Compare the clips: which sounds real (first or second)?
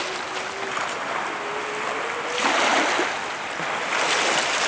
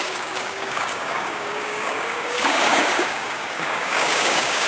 first